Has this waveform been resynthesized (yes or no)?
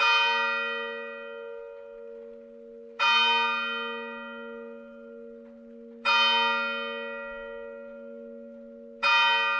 no